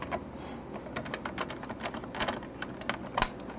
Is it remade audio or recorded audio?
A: recorded